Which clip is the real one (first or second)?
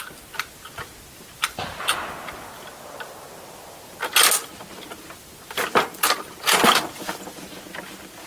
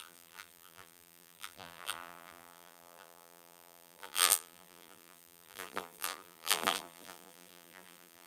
first